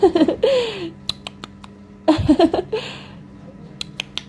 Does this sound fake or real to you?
real